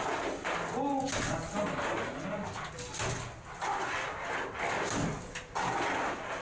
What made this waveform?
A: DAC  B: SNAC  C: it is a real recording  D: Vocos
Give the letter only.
C